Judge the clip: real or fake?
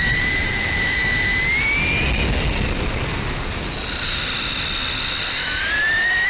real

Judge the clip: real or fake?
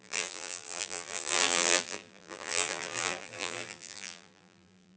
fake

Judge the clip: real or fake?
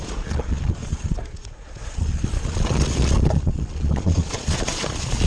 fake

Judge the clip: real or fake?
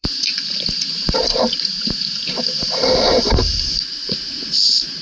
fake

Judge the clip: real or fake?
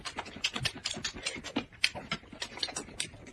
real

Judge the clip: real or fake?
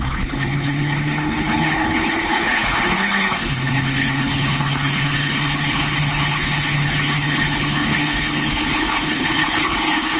fake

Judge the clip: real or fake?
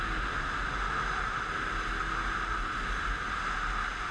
real